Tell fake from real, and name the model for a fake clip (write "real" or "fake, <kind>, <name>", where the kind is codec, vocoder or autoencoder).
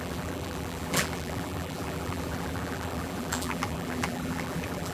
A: fake, vocoder, BigVGAN v2